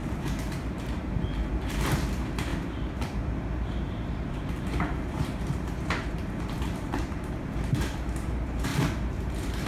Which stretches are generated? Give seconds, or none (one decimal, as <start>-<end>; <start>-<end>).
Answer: 0.0-9.7